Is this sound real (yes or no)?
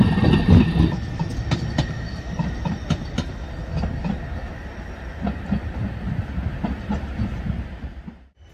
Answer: yes